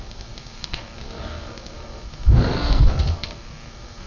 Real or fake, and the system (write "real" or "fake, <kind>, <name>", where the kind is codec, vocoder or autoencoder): fake, codec, SNAC